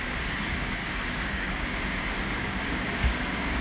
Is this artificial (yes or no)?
yes